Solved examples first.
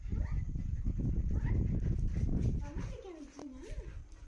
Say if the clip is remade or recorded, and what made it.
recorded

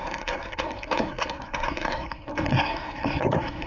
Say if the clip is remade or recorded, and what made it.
remade, codec, SNAC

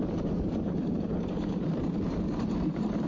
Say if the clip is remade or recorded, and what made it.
remade, vocoder, BigVGAN v2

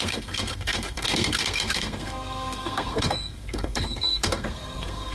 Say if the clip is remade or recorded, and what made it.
remade, codec, SNAC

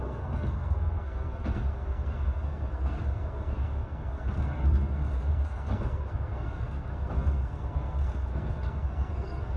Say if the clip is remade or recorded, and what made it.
remade, codec, SNAC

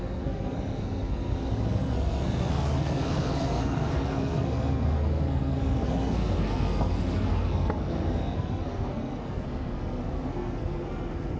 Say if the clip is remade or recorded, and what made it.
remade, codec, SNAC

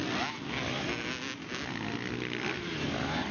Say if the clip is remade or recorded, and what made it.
recorded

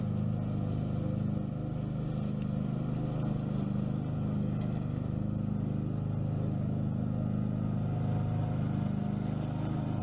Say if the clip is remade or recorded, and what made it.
recorded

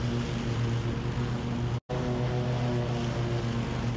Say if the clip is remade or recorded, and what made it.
recorded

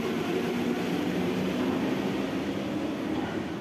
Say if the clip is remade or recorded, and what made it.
recorded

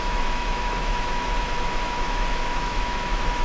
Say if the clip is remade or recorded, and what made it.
remade, autoencoder, DAC-VAE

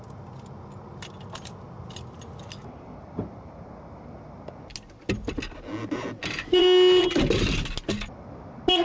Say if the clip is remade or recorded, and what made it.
recorded